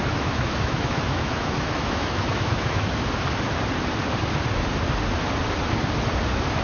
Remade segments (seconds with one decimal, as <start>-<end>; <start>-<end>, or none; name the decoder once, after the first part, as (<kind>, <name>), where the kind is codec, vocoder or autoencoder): 0.0-2.9 (autoencoder, DAC-VAE)